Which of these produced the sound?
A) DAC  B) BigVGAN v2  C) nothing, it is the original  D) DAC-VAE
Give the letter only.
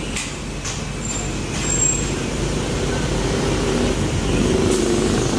C